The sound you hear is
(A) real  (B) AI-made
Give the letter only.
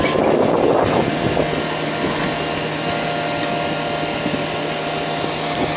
A